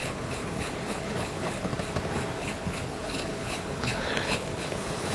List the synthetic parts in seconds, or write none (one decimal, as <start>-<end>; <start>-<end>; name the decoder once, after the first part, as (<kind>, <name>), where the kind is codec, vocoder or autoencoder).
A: 0.0-1.7 (codec, HILCodec); 2.4-5.1